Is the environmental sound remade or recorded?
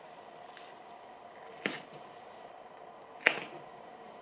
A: recorded